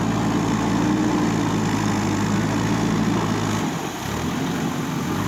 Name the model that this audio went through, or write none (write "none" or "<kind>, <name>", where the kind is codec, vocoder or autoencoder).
none